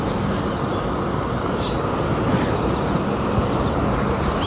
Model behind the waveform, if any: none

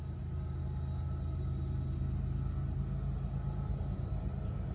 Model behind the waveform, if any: none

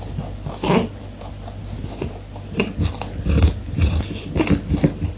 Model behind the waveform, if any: none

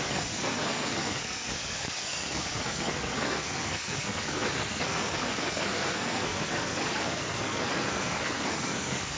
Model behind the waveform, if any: codec, SNAC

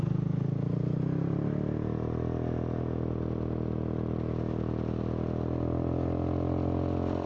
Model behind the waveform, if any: none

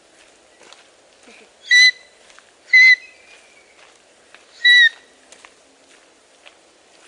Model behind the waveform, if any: none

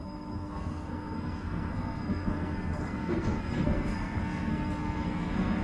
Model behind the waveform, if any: codec, SNAC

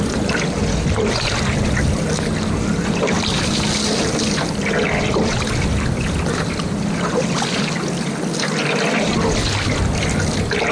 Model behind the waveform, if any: none